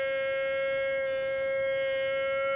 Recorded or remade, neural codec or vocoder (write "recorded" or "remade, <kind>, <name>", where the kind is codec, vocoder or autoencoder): recorded